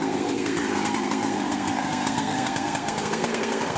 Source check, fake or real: fake